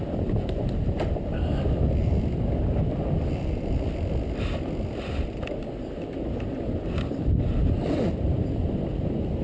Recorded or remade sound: recorded